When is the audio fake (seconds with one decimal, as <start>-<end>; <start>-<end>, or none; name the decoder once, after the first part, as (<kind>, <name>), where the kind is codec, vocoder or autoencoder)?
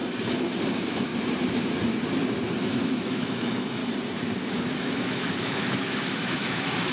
0.7-1.1 (autoencoder, DAC-VAE); 2.6-3.8; 4.8-6.9